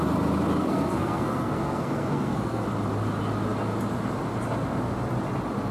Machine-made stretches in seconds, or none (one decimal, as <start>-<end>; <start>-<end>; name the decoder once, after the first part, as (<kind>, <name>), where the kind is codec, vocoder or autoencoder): 0.6-2.6 (codec, SNAC)